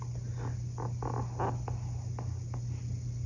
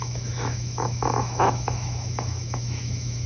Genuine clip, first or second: first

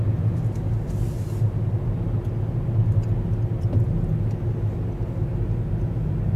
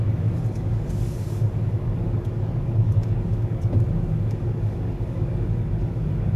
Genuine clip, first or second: first